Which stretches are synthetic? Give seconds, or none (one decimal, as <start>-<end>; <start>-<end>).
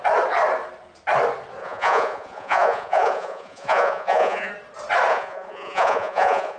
1.6-4.5; 5.1-6.6